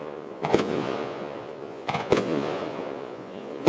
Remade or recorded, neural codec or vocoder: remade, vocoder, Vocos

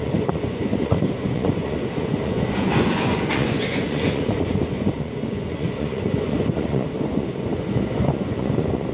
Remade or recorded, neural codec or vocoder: remade, vocoder, Vocos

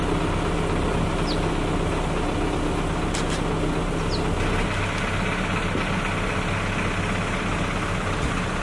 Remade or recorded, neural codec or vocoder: recorded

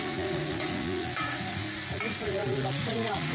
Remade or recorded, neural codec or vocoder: remade, vocoder, Vocos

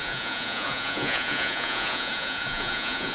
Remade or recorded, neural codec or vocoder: remade, vocoder, Vocos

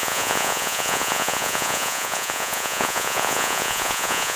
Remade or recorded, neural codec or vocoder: remade, vocoder, Vocos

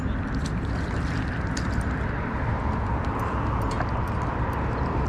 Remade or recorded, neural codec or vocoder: recorded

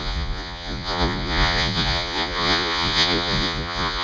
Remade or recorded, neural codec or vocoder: remade, vocoder, Vocos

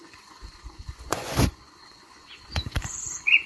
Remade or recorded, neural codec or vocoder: remade, vocoder, Vocos